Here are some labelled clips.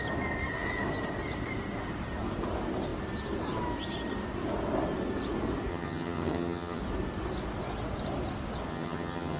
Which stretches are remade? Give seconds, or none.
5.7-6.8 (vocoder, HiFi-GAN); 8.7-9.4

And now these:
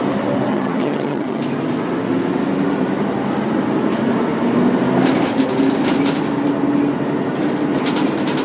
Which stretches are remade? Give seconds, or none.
0.5-1.4 (vocoder, HiFi-GAN)

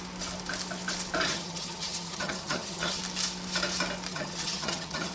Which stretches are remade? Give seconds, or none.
1.3-3.0 (vocoder, HiFi-GAN); 4.1-5.1

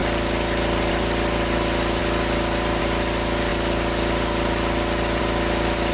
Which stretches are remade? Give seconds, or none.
none